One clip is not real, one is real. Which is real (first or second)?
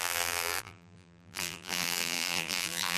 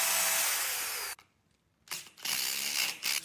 second